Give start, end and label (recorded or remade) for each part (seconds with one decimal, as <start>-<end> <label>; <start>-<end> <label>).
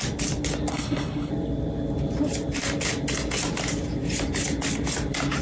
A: 0.0-0.7 recorded; 0.7-1.3 remade; 1.3-5.4 recorded